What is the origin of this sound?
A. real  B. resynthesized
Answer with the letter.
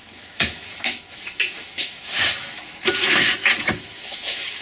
B